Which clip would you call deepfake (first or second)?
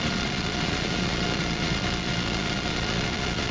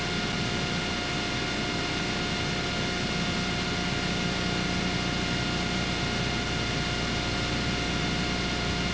first